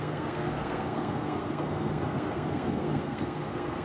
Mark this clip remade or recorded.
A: remade